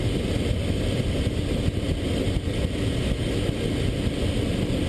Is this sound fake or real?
real